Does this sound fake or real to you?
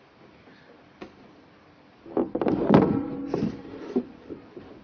fake